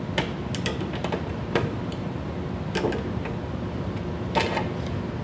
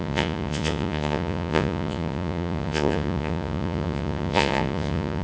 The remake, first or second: second